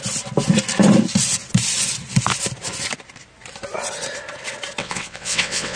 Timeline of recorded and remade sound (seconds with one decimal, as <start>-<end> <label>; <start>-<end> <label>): 0.0-4.8 recorded; 4.8-5.8 remade